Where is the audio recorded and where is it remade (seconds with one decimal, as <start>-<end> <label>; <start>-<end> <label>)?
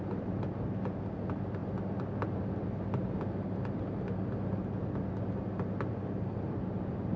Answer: 0.0-7.2 recorded